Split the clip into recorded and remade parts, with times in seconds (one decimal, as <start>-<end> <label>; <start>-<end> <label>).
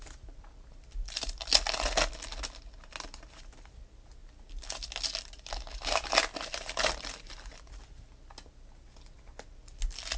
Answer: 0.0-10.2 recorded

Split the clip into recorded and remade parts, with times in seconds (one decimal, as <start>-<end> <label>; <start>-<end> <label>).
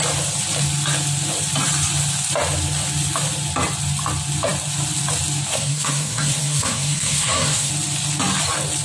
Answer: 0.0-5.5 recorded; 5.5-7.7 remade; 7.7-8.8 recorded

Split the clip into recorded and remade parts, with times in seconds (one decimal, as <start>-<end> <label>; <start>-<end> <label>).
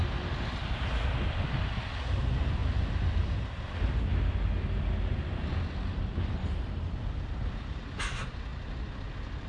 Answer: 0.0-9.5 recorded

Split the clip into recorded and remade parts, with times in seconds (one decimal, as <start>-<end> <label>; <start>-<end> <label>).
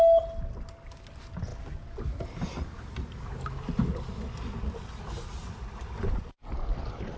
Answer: 0.0-7.2 recorded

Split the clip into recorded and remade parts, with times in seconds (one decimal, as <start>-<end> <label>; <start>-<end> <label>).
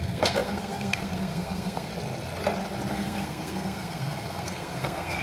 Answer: 0.0-1.9 remade; 1.9-2.9 recorded; 2.9-5.2 remade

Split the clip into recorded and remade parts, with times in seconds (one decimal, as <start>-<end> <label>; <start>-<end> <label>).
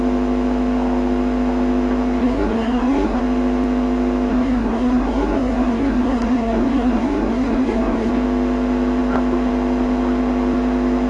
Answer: 0.0-2.2 recorded; 2.2-3.2 remade; 3.2-4.3 recorded; 4.3-8.1 remade; 8.1-11.1 recorded